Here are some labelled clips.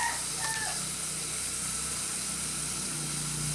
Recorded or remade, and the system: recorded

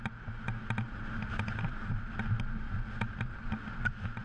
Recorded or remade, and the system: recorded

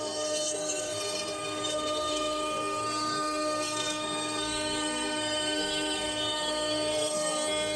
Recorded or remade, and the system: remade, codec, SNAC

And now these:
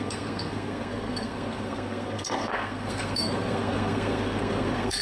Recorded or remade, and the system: remade, codec, SNAC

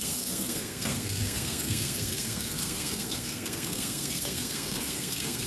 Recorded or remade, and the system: remade, codec, SNAC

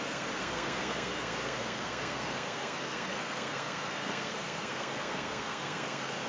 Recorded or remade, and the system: remade, codec, SNAC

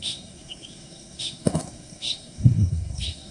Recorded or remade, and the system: remade, codec, SNAC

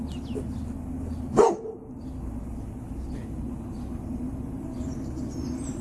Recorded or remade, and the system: recorded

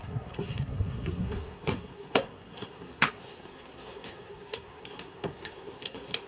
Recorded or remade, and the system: remade, codec, SNAC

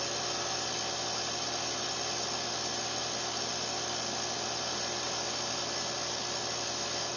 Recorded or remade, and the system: recorded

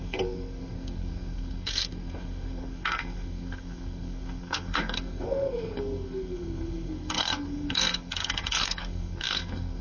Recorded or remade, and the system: remade, codec, SNAC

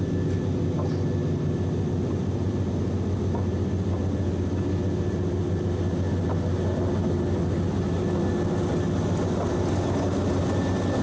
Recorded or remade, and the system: recorded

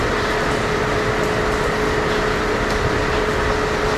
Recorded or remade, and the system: recorded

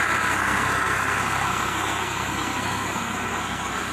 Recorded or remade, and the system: remade, codec, SNAC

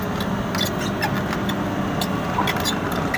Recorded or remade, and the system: recorded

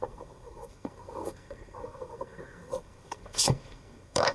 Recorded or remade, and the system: remade, codec, SNAC